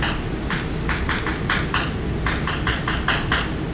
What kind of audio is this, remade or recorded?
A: recorded